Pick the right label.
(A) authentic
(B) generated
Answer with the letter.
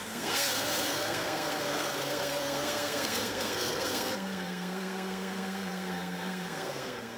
B